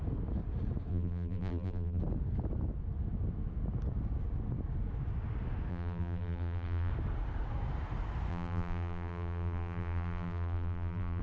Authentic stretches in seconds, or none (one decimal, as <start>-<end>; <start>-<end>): 0.0-0.9; 2.0-5.7; 6.9-8.3